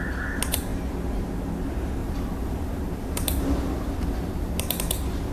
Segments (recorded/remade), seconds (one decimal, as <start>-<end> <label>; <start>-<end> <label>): 0.0-2.0 recorded; 2.0-5.3 remade